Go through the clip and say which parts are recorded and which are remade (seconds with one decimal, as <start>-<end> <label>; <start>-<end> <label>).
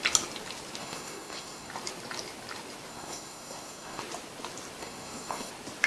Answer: 0.0-0.8 recorded; 0.8-1.7 remade; 1.7-2.9 recorded; 2.9-4.0 remade; 4.0-4.8 recorded; 4.8-5.5 remade; 5.5-5.9 recorded